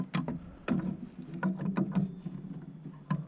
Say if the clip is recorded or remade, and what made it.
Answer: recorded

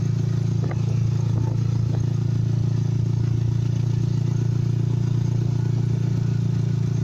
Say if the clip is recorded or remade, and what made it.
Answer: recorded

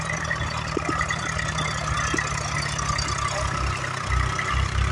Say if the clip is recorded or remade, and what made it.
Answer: recorded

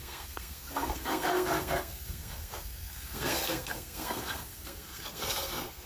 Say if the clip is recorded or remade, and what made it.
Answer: remade, codec, SNAC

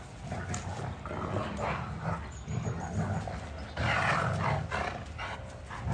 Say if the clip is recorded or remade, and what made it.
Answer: recorded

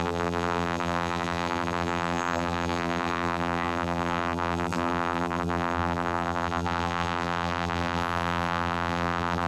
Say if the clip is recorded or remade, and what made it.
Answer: remade, vocoder, BigVGAN v2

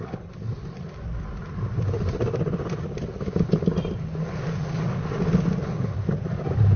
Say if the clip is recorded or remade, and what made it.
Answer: recorded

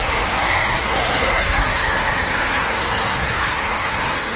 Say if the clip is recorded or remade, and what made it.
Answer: remade, codec, SNAC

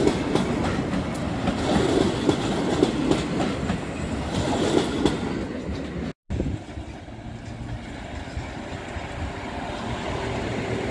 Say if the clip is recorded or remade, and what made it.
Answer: recorded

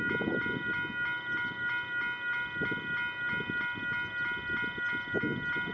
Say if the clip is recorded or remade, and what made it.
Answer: recorded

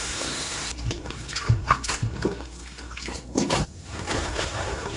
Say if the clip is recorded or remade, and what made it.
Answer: remade, codec, SNAC